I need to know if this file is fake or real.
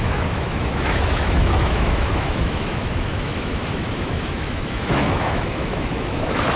fake